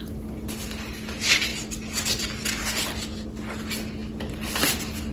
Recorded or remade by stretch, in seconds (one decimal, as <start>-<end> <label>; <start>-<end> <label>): 0.0-5.1 recorded

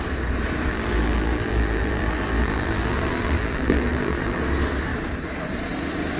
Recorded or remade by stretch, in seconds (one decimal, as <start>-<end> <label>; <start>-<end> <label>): 0.0-0.7 recorded; 0.7-4.4 remade; 4.4-6.2 recorded

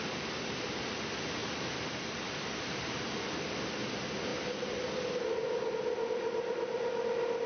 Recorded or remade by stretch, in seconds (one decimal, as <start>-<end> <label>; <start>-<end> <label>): 0.0-1.4 recorded; 1.4-3.6 remade; 3.6-7.5 recorded

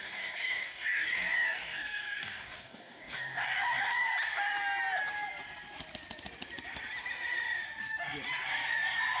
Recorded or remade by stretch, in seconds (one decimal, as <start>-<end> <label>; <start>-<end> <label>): 0.0-4.1 remade; 4.1-9.2 recorded